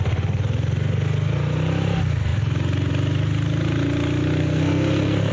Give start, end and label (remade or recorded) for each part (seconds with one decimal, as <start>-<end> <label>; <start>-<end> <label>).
0.0-4.4 recorded; 4.4-5.3 remade